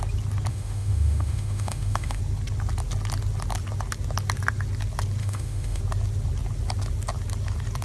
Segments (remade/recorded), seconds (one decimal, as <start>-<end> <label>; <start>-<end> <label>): 0.0-0.5 recorded; 0.5-2.2 remade; 2.2-5.2 recorded; 5.2-5.8 remade; 5.8-7.8 recorded